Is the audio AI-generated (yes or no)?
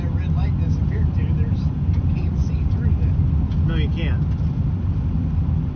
no